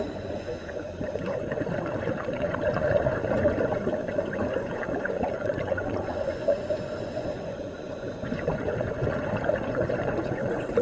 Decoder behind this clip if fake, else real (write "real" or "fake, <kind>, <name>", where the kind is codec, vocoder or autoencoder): fake, vocoder, Vocos